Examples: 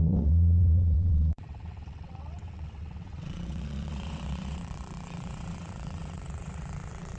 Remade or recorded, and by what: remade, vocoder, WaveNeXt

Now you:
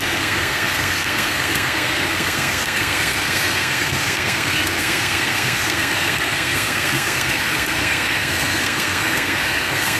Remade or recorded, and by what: remade, codec, SNAC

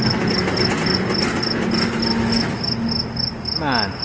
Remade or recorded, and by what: recorded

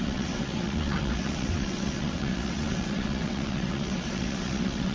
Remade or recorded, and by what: remade, vocoder, WaveNeXt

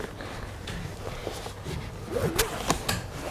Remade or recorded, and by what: recorded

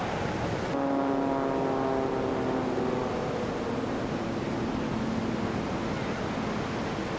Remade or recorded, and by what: recorded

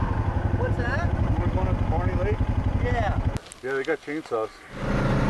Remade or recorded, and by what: recorded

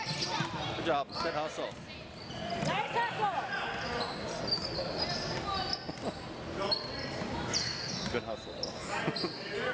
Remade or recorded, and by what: recorded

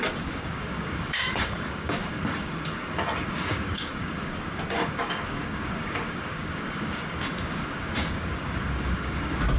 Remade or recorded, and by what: remade, codec, DAC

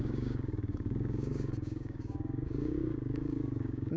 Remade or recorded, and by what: remade, codec, DAC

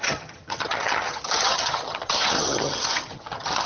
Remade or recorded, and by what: remade, vocoder, HiFi-GAN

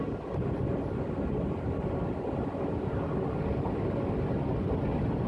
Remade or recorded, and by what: recorded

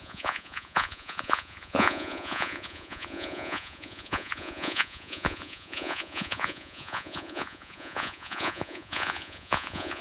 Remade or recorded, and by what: remade, vocoder, Vocos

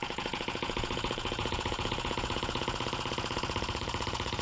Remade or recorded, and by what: remade, vocoder, Vocos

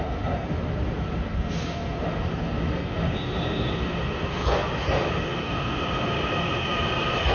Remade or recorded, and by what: recorded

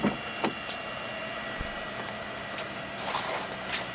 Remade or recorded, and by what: recorded